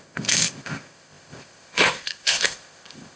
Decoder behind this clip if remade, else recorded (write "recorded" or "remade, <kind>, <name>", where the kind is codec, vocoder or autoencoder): remade, codec, ZipCodec